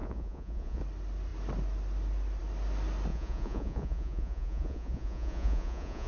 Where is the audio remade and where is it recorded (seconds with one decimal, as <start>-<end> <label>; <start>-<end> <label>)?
0.0-0.8 remade; 0.8-3.1 recorded; 3.1-6.1 remade